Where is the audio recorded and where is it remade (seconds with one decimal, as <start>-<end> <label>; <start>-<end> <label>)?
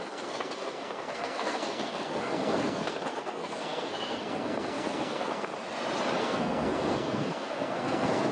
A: 0.0-5.5 remade; 5.5-6.2 recorded; 6.2-8.3 remade